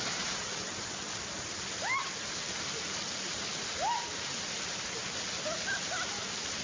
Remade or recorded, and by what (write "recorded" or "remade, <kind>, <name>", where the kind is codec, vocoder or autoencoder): recorded